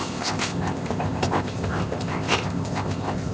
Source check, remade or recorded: remade